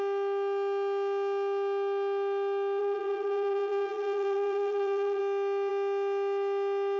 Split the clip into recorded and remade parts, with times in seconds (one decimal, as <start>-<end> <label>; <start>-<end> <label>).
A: 0.0-2.8 recorded; 2.8-5.2 remade; 5.2-7.0 recorded